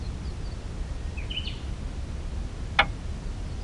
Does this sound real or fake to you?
real